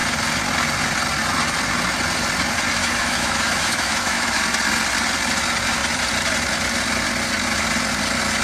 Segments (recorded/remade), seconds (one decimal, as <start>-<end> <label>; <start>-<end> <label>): 0.0-2.8 recorded; 2.8-4.4 remade; 4.4-8.4 recorded